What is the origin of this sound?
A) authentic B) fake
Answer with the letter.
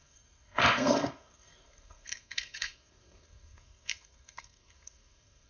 B